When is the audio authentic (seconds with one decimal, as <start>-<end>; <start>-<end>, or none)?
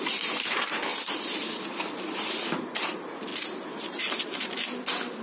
0.0-0.9; 1.5-3.3